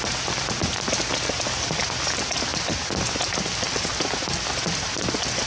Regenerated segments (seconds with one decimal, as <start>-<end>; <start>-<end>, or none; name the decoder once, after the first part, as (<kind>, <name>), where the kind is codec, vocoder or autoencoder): none